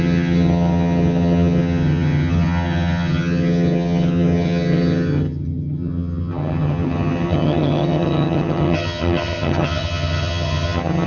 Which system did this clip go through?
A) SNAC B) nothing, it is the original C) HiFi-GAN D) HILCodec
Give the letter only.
C